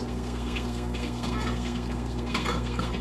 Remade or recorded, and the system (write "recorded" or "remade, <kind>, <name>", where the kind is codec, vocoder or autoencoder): remade, codec, SNAC